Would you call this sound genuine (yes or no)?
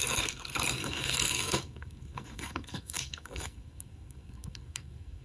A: no